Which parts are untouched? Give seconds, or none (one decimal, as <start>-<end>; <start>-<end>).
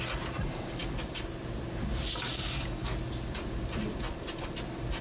0.0-2.3; 2.9-5.0